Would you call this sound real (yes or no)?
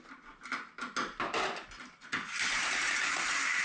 yes